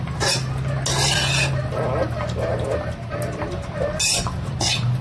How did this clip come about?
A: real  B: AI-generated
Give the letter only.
A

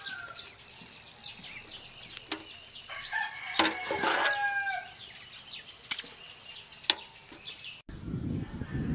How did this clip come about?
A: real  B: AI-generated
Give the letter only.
A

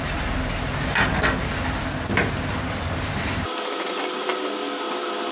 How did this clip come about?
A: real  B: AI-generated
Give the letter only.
A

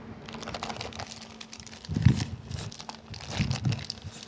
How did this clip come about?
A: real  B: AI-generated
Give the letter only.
A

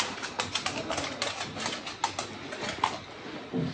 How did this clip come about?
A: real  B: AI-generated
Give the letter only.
A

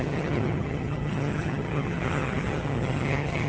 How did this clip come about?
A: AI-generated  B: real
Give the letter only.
A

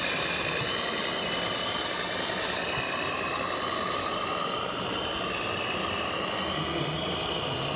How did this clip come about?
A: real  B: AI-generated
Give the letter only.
A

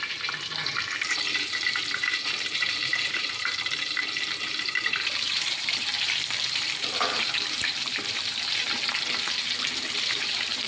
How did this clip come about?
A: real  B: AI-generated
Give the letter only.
B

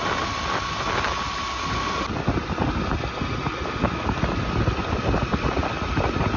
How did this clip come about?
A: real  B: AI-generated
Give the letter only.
A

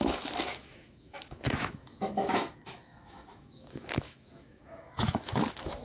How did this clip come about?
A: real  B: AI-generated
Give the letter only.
B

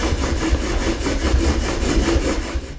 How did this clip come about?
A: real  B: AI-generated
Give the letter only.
A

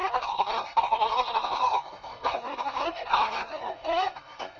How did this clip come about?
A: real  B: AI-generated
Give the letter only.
B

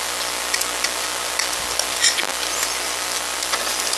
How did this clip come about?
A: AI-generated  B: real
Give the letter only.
A